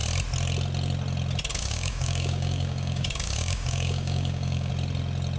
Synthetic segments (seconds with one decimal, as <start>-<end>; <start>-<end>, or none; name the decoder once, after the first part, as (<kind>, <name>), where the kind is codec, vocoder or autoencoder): 1.5-4.7 (codec, DAC)